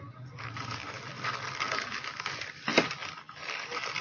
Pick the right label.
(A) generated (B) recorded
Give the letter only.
B